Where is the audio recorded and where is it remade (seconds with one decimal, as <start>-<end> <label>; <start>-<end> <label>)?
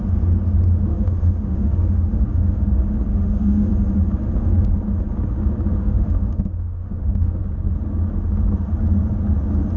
0.0-0.9 recorded; 0.9-2.6 remade; 2.6-3.1 recorded; 3.1-3.7 remade; 3.7-5.8 recorded; 5.8-7.4 remade; 7.4-9.8 recorded